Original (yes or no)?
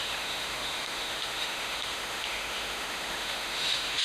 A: no